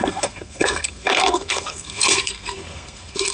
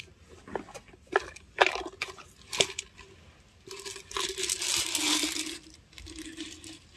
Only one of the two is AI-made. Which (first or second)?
first